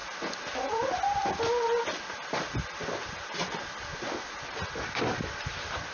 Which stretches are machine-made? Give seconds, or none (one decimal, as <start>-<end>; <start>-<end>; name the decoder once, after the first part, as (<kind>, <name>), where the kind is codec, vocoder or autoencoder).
none